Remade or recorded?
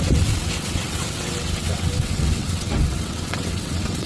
remade